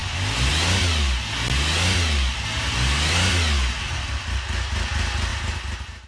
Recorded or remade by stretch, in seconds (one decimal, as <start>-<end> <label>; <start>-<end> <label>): 0.0-5.3 recorded; 5.3-6.1 remade